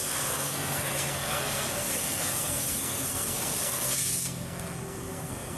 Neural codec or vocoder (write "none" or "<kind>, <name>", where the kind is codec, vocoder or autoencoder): codec, SNAC